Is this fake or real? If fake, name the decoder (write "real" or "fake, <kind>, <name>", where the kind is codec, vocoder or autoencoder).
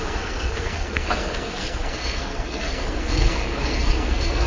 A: fake, codec, SNAC